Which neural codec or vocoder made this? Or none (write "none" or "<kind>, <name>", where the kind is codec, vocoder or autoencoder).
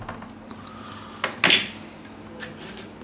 none